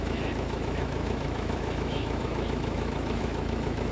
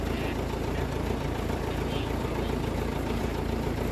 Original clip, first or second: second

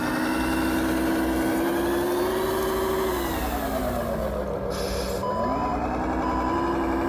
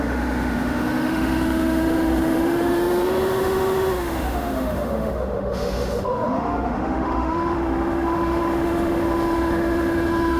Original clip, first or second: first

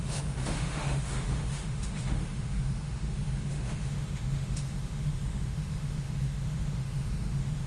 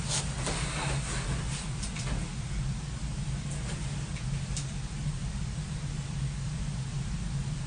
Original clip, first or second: second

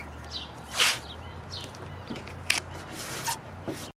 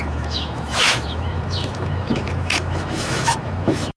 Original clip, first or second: first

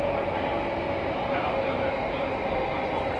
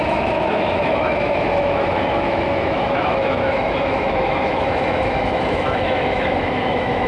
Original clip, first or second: first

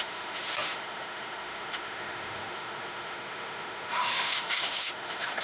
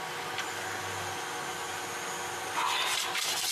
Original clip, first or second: second